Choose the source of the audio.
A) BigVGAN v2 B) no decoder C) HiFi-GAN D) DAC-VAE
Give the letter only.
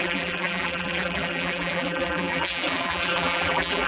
A